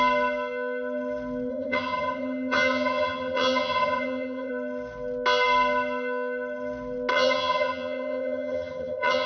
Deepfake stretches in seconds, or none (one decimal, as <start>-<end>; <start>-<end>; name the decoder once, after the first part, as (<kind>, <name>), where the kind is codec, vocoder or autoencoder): 1.5-4.5 (vocoder, HiFi-GAN); 7.1-9.3